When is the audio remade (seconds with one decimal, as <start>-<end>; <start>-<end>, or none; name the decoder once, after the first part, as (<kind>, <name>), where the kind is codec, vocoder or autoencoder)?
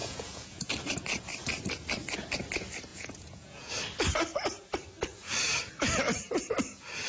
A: 0.0-0.7 (vocoder, Vocos); 2.9-3.7